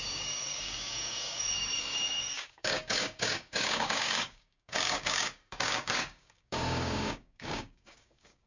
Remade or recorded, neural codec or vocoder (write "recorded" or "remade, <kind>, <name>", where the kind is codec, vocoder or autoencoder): remade, codec, DAC